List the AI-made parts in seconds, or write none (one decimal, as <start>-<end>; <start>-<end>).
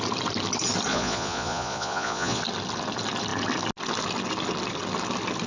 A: 0.9-2.4